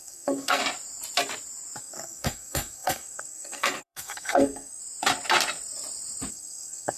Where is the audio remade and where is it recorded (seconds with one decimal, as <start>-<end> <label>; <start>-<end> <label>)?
0.0-0.6 remade; 0.6-1.8 recorded; 1.8-4.8 remade; 4.8-6.3 recorded; 6.3-7.0 remade